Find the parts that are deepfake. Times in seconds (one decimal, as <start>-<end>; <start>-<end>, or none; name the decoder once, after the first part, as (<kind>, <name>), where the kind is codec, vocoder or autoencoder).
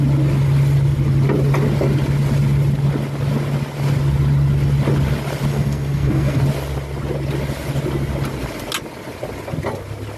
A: 5.5-6.4 (codec, SNAC)